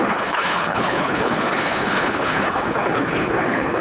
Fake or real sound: fake